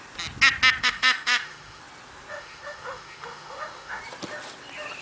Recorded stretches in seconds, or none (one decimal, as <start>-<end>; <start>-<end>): 0.0-0.8; 1.8-2.3; 4.0-5.0